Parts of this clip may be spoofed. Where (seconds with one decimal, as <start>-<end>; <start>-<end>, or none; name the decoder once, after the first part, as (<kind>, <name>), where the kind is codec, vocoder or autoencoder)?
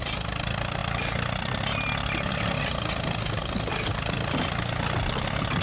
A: none